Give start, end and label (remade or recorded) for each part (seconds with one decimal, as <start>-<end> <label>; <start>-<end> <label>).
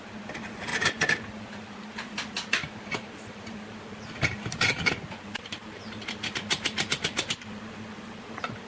0.0-8.7 recorded